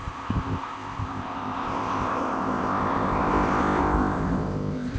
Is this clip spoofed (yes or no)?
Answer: yes